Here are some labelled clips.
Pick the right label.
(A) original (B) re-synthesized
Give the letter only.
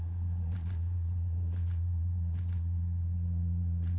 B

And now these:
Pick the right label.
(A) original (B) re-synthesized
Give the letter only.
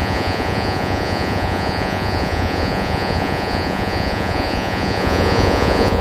B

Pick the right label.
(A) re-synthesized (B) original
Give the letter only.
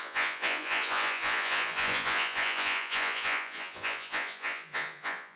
A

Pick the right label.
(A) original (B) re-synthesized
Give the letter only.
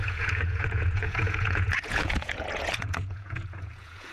B